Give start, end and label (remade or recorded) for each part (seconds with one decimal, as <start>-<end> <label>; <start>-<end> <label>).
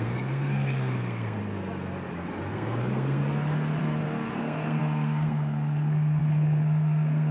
0.0-1.4 remade; 1.4-2.5 recorded; 2.5-3.2 remade; 3.2-3.8 recorded; 3.8-7.3 remade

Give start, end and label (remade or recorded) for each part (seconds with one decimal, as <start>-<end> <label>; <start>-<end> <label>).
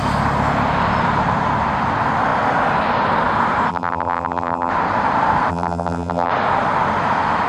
0.0-3.7 recorded; 3.7-4.7 remade; 4.7-5.5 recorded; 5.5-6.3 remade; 6.3-7.5 recorded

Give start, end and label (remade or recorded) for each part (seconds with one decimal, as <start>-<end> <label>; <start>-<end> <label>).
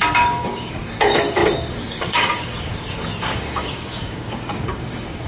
0.0-5.3 remade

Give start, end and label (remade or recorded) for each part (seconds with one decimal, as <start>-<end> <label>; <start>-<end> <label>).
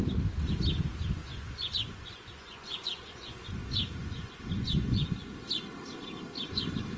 0.0-1.2 recorded; 1.2-5.3 remade; 5.3-7.0 recorded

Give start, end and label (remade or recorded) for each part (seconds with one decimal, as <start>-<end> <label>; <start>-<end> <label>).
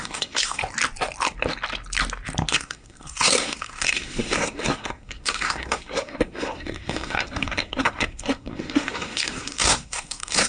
0.0-0.6 remade; 0.6-2.5 recorded; 2.5-10.5 remade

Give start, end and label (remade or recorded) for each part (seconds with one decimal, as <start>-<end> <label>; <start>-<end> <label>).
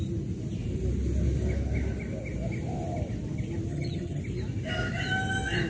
0.0-3.7 recorded; 3.7-4.2 remade; 4.2-5.7 recorded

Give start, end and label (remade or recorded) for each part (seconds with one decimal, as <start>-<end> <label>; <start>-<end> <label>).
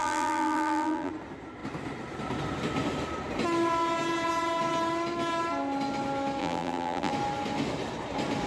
0.0-1.1 remade; 1.1-6.4 recorded; 6.4-7.1 remade; 7.1-8.5 recorded